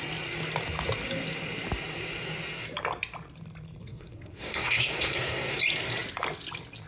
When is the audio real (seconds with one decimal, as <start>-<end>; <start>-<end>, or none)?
0.0-3.8; 5.6-6.9